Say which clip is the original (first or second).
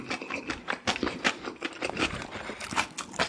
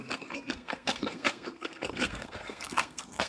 first